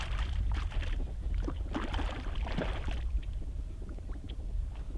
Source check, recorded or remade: recorded